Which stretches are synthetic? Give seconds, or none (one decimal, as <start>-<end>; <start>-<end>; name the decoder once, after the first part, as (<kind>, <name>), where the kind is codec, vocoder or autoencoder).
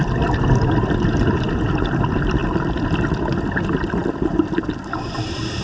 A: none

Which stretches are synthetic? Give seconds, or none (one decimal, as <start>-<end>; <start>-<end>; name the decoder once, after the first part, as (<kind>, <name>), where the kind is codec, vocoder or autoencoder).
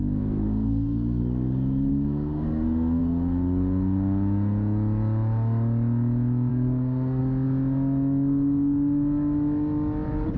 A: 0.0-1.2 (codec, SNAC); 1.9-3.0; 6.5-7.2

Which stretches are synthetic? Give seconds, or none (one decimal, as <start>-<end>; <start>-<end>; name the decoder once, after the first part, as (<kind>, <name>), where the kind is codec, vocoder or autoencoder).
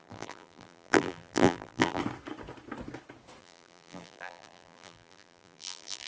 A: 0.0-2.0 (vocoder, BigVGAN v2); 3.4-6.1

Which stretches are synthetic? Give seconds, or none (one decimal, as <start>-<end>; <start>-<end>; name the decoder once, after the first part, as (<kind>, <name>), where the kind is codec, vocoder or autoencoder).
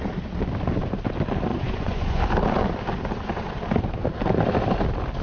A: 1.5-2.2 (vocoder, Vocos)